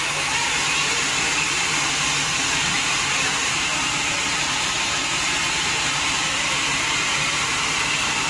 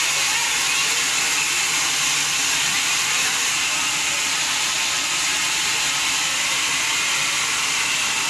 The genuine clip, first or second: second